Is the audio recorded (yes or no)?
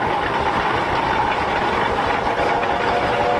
yes